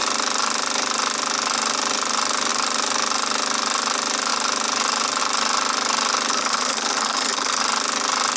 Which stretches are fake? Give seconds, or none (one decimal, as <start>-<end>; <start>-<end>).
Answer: 6.3-7.6